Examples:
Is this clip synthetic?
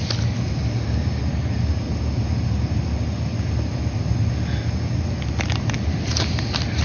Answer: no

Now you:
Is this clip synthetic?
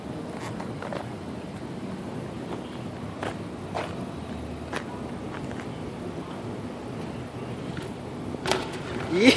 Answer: no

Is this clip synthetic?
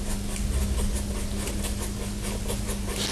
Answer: no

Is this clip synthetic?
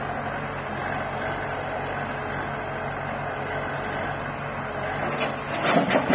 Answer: no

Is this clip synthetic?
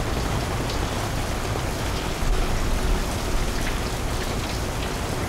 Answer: no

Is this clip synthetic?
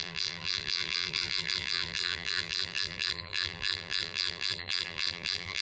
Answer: yes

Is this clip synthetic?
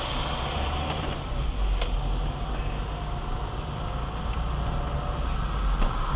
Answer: no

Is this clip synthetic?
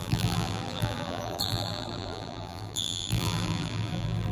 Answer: yes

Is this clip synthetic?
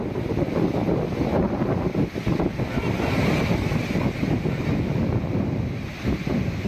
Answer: no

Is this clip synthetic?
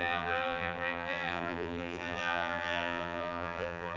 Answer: yes